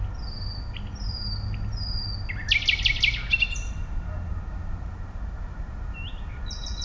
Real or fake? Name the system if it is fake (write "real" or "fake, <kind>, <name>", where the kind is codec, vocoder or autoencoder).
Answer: real